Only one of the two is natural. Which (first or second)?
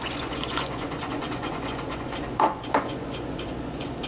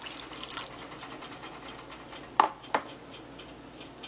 second